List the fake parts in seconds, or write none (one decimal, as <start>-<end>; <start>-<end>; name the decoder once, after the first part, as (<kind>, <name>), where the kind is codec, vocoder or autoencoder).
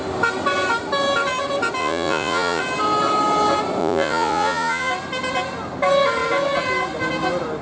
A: 1.8-2.6 (vocoder, Vocos); 3.8-4.9